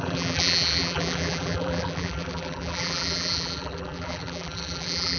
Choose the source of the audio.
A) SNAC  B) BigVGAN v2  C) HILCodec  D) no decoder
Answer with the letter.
B